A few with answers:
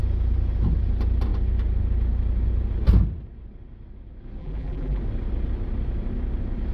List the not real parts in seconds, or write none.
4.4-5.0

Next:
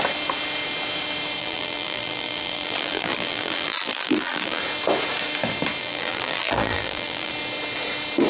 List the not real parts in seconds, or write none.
1.4-4.6; 5.8-7.3

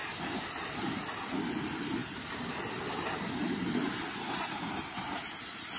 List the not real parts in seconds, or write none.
0.0-0.9; 2.0-5.8

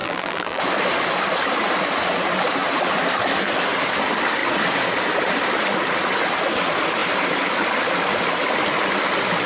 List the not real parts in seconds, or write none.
0.0-0.6

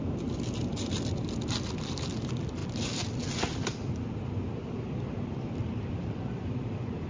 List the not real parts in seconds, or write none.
0.0-7.1